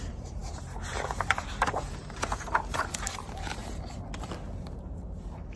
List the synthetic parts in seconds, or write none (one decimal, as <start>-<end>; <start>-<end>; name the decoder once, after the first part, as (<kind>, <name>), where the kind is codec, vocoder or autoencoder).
0.0-3.6 (vocoder, BigVGAN v2); 4.6-5.6